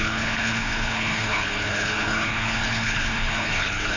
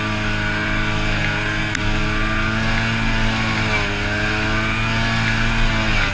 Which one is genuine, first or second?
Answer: second